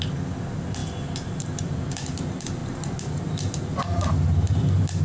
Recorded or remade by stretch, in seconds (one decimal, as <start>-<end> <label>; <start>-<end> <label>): 0.0-5.0 recorded